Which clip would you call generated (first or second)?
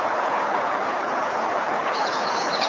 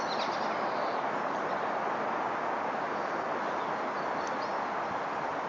first